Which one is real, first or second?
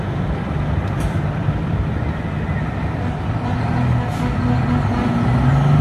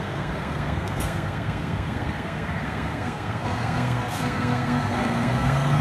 first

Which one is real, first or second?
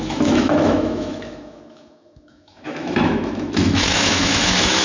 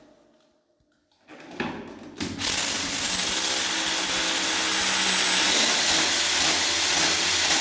second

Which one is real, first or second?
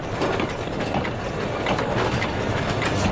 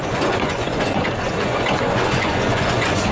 first